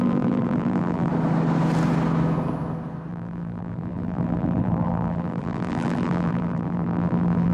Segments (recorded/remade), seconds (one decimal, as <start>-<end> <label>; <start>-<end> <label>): 0.0-1.1 remade; 1.1-3.1 recorded; 3.1-7.5 remade